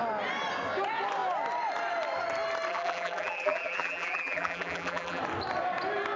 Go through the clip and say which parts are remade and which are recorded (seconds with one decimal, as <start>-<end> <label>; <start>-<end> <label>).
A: 0.0-2.7 recorded; 2.7-5.2 remade; 5.2-6.2 recorded